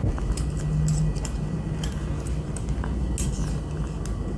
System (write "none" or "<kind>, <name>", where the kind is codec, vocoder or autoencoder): none